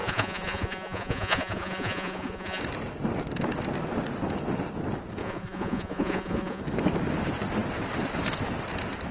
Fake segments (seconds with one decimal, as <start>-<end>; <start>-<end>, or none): 0.0-2.6; 5.2-6.6